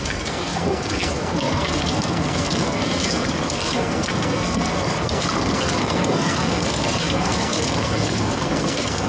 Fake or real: fake